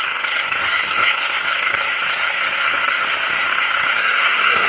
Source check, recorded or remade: remade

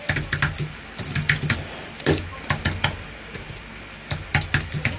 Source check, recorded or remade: recorded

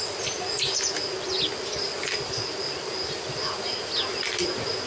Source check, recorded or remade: recorded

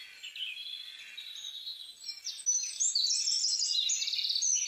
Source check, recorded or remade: recorded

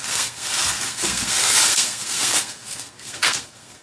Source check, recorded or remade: remade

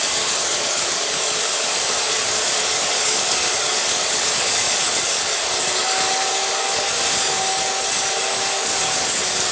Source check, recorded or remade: remade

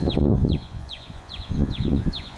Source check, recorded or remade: remade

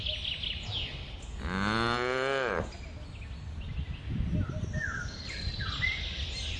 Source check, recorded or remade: recorded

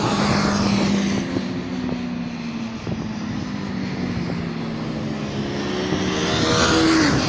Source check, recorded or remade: recorded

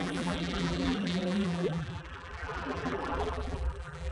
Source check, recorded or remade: remade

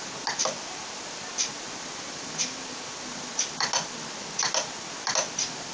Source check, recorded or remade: recorded